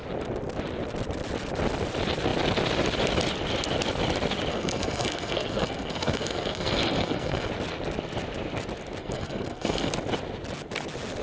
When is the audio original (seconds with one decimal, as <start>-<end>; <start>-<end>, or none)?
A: 0.0-4.5; 7.5-9.0; 9.9-11.2